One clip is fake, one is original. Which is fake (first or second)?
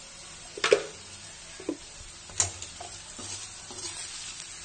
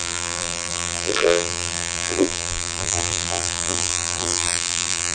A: second